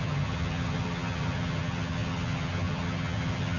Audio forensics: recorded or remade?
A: remade